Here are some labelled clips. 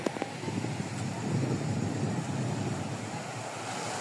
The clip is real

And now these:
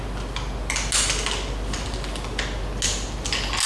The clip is real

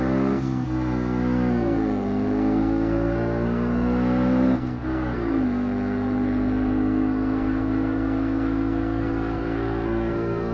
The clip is fake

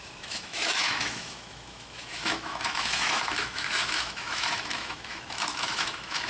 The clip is fake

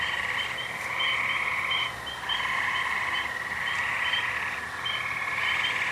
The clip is real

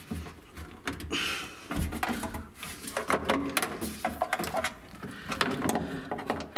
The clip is real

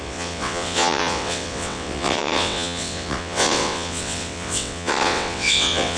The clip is fake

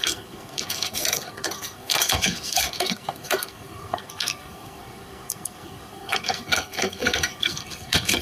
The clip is fake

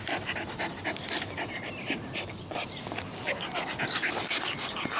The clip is real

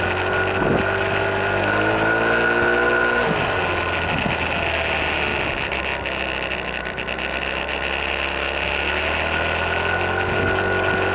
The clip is real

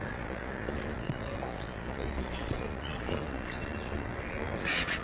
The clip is fake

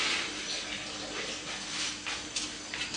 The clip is real